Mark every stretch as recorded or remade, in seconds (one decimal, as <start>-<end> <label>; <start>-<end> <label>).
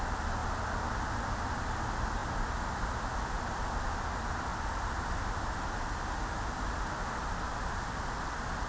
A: 0.0-8.7 recorded